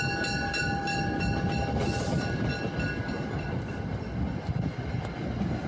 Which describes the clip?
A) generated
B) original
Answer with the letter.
B